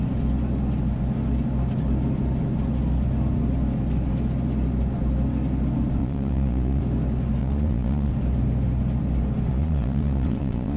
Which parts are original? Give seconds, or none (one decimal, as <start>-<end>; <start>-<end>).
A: 0.0-6.0; 6.8-7.4; 8.1-9.5